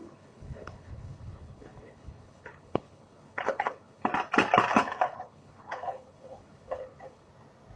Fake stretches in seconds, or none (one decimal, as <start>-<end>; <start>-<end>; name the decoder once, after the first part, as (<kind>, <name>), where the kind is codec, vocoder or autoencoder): 0.0-4.1 (codec, HILCodec); 4.7-7.3